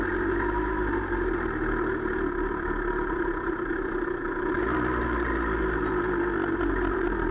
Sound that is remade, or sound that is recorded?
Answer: recorded